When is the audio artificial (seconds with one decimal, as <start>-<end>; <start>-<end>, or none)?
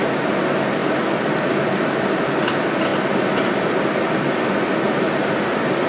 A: none